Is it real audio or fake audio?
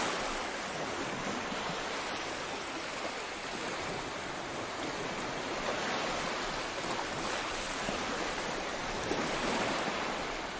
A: real